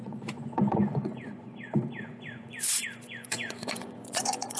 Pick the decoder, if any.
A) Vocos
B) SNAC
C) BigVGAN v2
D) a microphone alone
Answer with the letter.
A